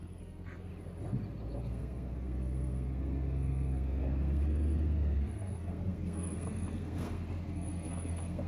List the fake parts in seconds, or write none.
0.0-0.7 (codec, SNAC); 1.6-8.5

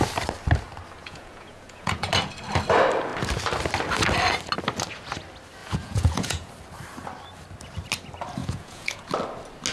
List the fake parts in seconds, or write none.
1.0-2.1 (vocoder, Vocos); 5.6-6.5; 8.4-9.0

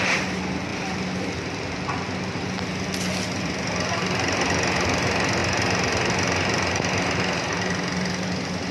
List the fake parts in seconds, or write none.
none